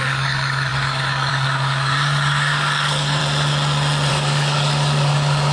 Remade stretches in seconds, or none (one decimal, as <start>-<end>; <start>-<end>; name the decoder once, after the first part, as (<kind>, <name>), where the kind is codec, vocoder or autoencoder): 0.0-3.2 (codec, DAC); 4.1-5.5